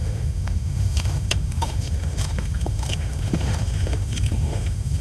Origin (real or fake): fake